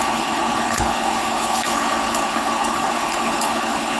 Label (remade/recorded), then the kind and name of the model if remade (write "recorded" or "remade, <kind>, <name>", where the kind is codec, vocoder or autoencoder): remade, codec, HILCodec